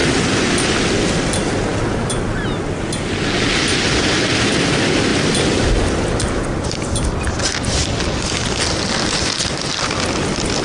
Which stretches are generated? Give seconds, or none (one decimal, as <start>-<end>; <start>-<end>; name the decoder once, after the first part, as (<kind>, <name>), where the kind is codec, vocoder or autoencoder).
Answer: none